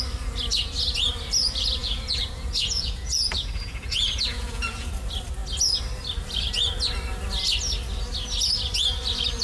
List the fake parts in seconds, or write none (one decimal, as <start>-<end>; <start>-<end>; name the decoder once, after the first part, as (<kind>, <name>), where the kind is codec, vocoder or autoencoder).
1.8-4.9 (vocoder, Vocos)